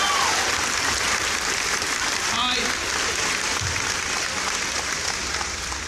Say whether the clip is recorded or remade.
recorded